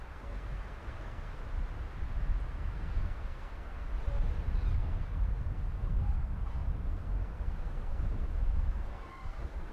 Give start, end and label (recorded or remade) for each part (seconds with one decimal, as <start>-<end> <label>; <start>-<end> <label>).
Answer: 0.0-1.4 remade; 1.4-2.5 recorded; 2.5-3.9 remade; 3.9-4.7 recorded; 4.7-9.7 remade